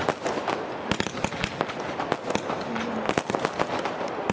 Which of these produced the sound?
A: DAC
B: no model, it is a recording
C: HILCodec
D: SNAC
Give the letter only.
B